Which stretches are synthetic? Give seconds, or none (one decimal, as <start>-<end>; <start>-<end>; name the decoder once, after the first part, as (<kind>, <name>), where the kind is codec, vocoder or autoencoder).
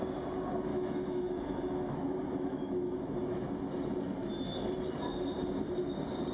0.7-3.4 (autoencoder, DAC-VAE)